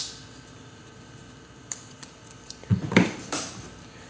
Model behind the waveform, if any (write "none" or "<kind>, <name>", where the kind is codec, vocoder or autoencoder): vocoder, BigVGAN v2